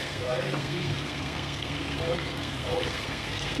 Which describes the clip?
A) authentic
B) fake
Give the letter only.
B